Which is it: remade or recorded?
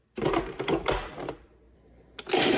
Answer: recorded